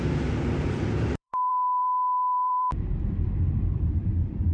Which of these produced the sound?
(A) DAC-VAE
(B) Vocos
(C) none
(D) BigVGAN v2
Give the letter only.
D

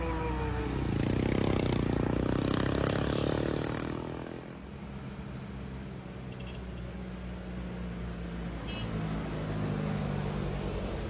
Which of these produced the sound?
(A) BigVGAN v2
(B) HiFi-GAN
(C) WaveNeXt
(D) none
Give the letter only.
D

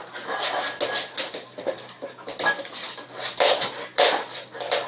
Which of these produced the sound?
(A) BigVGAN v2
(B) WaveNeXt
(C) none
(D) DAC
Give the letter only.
C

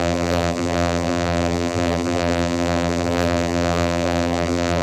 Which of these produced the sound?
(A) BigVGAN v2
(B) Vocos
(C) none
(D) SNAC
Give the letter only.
A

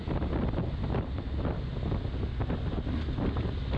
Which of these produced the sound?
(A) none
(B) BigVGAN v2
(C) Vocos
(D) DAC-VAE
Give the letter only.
A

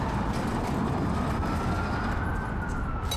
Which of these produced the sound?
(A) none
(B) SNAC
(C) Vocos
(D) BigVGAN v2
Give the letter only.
A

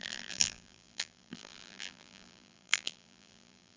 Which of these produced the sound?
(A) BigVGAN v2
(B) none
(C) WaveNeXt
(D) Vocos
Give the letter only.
A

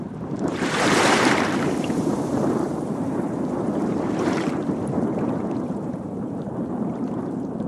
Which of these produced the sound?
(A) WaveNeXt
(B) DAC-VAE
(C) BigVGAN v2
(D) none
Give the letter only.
C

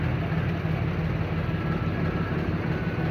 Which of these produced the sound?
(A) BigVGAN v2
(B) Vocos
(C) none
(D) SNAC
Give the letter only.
C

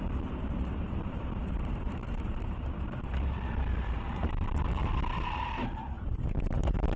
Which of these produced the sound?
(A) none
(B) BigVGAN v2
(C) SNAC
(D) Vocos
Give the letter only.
B